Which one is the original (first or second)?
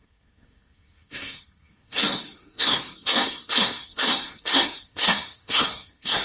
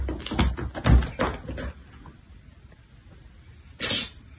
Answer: second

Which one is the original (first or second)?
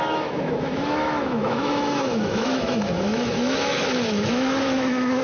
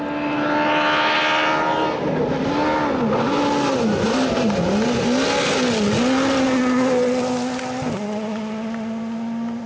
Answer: second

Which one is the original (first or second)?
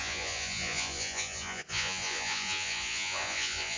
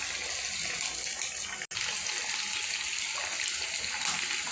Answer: second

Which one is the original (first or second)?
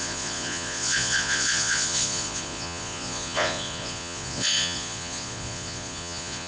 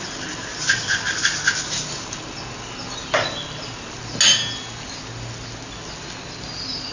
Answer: second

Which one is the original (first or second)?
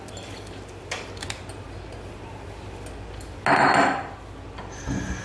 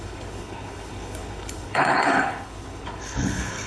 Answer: first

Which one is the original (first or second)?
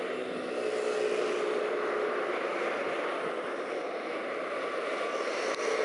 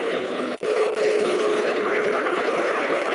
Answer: first